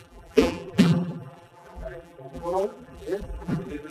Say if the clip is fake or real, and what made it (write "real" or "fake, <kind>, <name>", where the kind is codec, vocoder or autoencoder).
fake, vocoder, BigVGAN v2